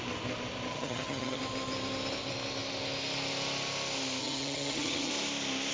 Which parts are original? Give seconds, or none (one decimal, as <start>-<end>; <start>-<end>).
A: 0.0-0.7; 1.4-4.2; 5.1-5.7